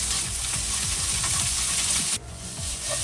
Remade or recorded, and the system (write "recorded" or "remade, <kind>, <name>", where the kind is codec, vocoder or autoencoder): remade, vocoder, Vocos